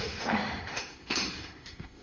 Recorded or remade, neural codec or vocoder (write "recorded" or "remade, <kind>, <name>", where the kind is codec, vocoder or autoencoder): remade, autoencoder, DAC-VAE